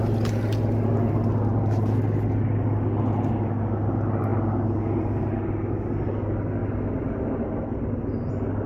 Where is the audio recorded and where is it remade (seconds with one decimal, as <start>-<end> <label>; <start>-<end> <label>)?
0.0-8.7 recorded